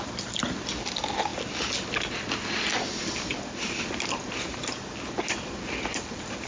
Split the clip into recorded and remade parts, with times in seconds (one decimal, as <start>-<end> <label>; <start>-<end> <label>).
0.0-6.5 recorded